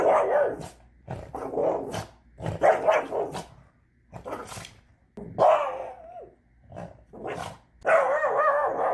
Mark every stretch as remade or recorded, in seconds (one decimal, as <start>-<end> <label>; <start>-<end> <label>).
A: 0.0-8.9 recorded